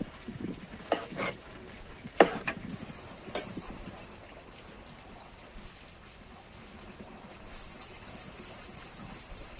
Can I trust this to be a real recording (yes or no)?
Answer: yes